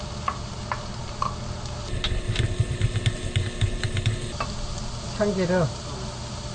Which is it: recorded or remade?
recorded